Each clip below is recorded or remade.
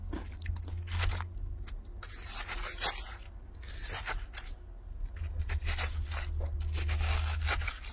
recorded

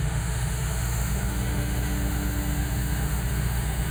remade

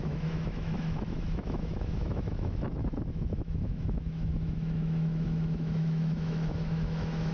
remade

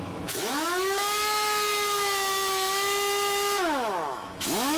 remade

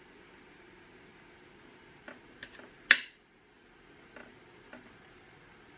recorded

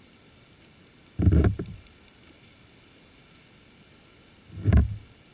recorded